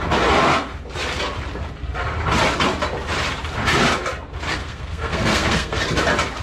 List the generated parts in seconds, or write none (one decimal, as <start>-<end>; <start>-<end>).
4.6-5.8

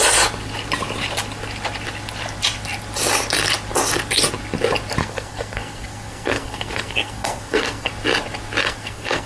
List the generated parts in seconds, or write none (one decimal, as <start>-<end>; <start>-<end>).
5.0-7.9; 8.6-9.3

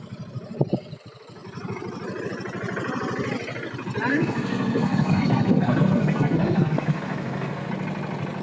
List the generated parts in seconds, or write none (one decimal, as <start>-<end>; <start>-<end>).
4.1-7.7

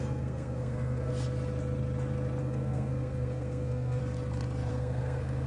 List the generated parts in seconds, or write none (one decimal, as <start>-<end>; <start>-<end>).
0.0-1.1; 2.4-4.0; 4.7-5.5

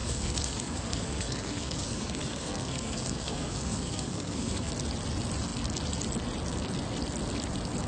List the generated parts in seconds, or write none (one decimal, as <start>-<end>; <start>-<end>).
0.0-4.7

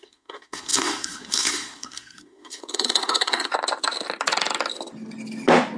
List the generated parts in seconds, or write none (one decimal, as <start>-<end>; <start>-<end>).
0.0-3.5